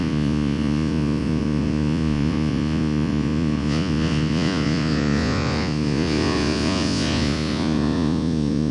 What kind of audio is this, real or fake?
fake